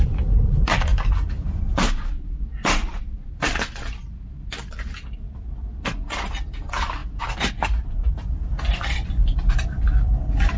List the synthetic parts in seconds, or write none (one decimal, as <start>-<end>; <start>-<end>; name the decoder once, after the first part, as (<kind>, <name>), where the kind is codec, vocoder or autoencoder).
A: 0.0-7.0 (vocoder, BigVGAN v2); 8.1-10.6